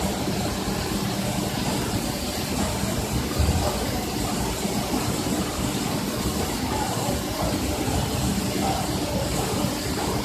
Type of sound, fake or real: real